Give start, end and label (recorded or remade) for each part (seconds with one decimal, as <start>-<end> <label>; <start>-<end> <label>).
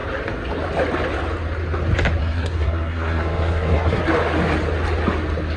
0.0-2.2 recorded; 2.2-4.0 remade; 4.0-5.6 recorded